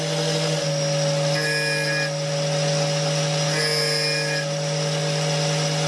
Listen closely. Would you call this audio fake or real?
real